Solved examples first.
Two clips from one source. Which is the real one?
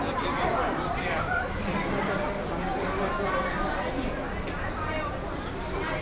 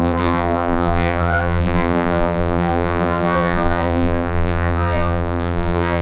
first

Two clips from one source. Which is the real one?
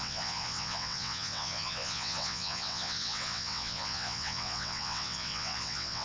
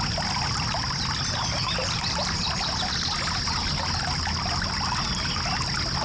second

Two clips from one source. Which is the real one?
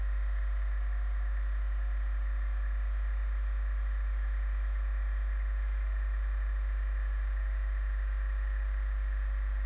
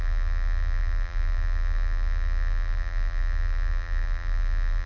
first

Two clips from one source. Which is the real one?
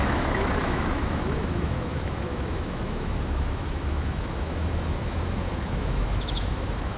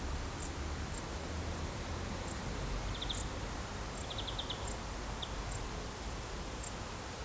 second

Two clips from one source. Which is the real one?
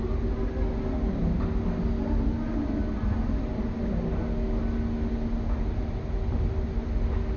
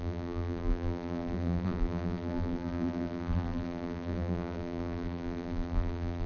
first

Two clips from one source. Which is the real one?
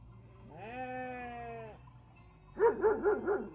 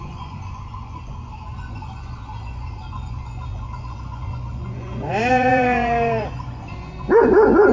first